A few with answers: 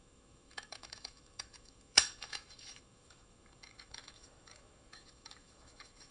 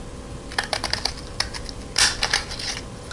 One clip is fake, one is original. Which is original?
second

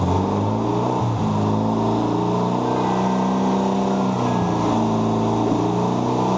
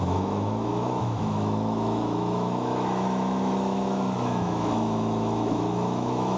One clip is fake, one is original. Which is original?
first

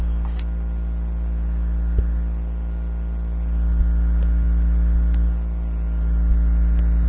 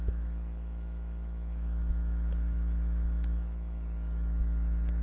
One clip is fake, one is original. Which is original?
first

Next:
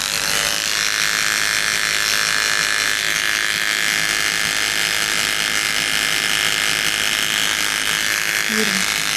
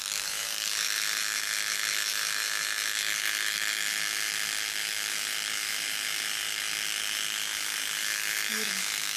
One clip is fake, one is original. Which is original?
first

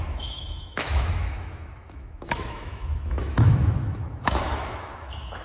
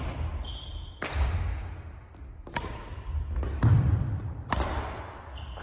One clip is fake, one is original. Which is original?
second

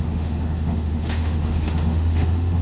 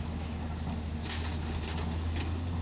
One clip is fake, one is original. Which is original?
second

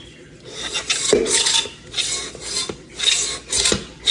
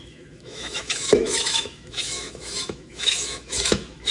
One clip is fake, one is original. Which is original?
first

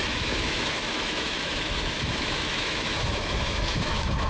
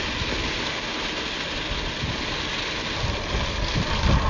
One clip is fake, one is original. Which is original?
second